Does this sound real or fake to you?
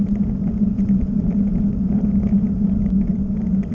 real